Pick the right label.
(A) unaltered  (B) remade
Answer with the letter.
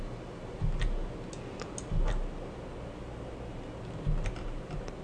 A